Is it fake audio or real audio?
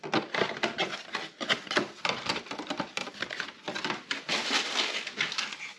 real